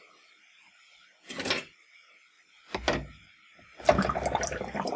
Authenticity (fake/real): real